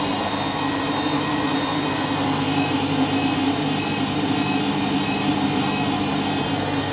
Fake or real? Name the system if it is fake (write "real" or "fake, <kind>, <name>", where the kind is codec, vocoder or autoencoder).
real